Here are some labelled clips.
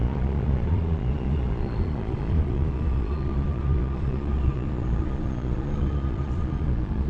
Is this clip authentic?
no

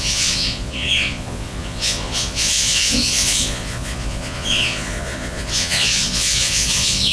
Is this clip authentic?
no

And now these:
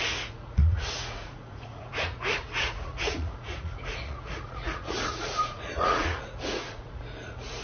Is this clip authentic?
no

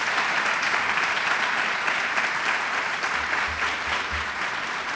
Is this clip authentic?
yes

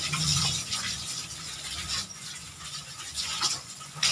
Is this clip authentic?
no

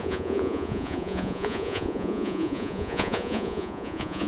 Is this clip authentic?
no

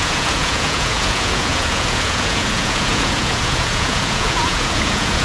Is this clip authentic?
no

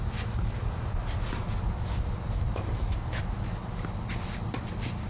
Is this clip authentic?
yes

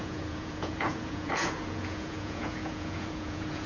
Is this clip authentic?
no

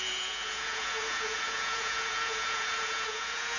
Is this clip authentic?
no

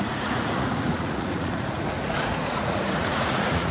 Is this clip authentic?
no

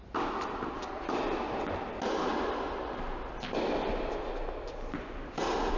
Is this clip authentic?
yes